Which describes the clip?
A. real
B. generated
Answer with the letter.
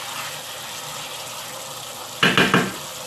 A